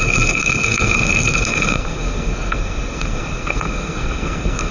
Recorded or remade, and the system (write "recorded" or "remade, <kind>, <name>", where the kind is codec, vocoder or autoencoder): remade, codec, SNAC